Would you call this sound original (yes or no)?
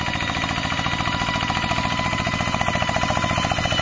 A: yes